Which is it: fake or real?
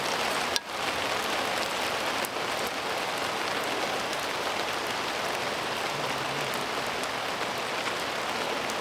real